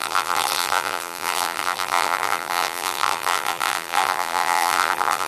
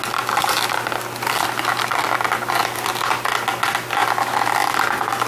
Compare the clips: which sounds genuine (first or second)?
second